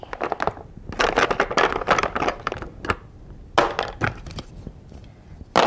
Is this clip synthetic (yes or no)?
no